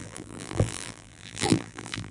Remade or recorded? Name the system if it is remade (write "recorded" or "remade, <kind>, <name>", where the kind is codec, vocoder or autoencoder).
remade, vocoder, BigVGAN v2